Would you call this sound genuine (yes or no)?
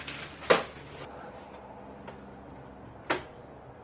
yes